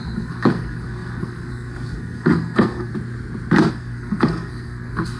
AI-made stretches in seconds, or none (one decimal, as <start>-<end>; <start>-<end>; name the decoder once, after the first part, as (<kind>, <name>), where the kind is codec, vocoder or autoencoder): 0.0-2.9 (codec, SNAC); 3.7-5.2